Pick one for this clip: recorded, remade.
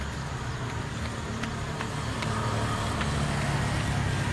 recorded